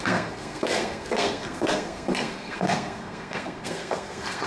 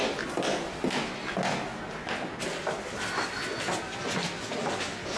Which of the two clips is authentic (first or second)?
second